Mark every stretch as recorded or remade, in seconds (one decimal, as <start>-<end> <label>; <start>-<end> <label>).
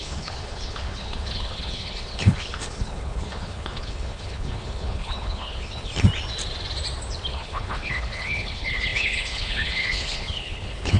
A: 0.0-5.9 remade; 5.9-7.3 recorded; 7.3-11.0 remade